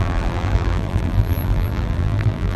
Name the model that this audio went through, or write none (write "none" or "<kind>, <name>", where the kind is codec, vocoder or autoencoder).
vocoder, BigVGAN v2